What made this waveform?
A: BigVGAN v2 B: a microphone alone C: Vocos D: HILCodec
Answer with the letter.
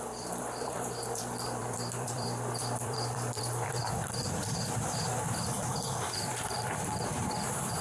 A